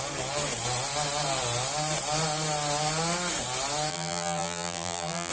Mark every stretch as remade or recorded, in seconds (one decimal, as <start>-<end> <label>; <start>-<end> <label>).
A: 0.0-3.9 recorded; 3.9-5.3 remade